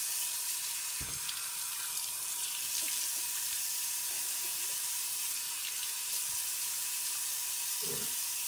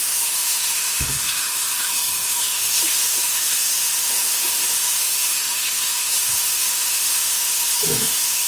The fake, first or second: second